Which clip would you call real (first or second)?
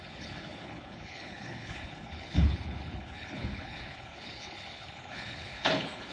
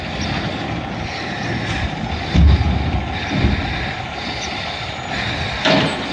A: second